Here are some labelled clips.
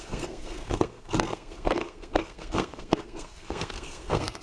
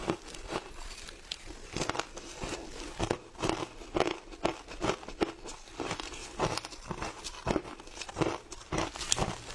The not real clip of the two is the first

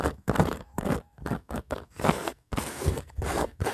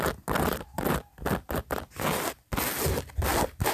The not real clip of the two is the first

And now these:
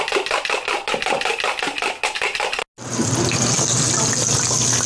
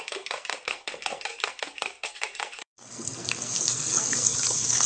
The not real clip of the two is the second